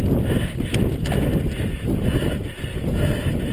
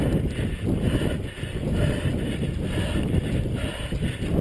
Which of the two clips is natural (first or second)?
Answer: first